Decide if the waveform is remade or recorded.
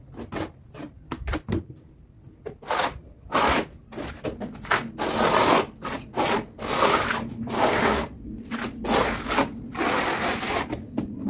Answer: recorded